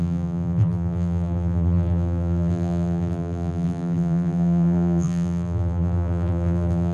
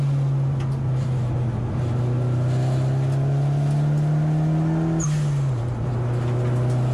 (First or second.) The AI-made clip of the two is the first